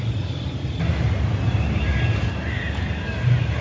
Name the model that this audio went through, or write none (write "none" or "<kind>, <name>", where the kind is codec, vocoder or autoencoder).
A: none